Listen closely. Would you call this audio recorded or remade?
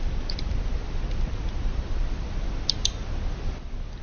remade